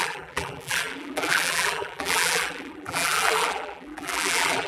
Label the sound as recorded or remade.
remade